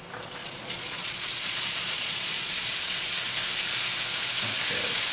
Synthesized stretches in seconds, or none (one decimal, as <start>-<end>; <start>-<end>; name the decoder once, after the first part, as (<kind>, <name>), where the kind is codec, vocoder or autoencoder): 0.4-3.2 (vocoder, Vocos)